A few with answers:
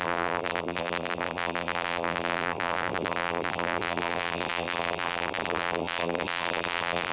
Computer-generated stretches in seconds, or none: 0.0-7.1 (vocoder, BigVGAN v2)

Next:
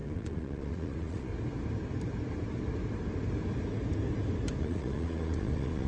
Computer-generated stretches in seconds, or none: 0.0-1.3 (vocoder, Vocos); 4.6-5.9

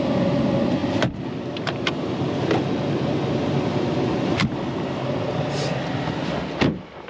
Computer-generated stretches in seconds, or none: none